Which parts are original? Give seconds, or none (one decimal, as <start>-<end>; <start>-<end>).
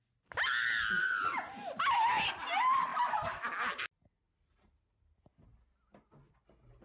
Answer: 0.0-6.8